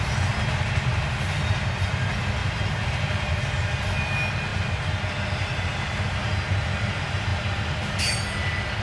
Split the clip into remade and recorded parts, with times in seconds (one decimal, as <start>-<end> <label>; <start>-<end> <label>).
0.0-2.4 recorded; 2.4-3.4 remade; 3.4-8.8 recorded